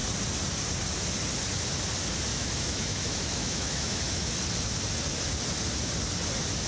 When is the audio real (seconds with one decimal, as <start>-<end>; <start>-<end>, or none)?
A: 0.0-2.3; 4.3-6.7